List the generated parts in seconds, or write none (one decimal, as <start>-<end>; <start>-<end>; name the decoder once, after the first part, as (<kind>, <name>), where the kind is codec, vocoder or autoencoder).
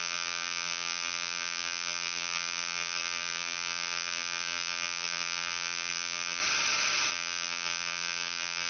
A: 0.0-6.4 (vocoder, BigVGAN v2); 7.1-8.7